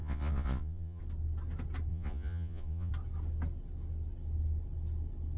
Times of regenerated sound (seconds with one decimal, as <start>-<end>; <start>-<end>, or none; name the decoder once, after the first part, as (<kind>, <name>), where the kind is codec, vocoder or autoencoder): 0.0-1.0 (vocoder, Vocos); 1.9-2.9